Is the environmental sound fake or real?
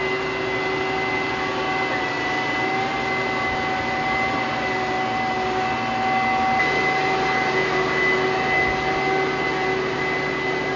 real